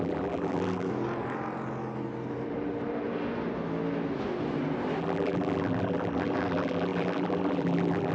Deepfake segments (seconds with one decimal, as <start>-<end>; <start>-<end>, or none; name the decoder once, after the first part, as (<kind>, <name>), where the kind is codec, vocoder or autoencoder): 0.0-0.9 (vocoder, BigVGAN v2); 5.0-8.1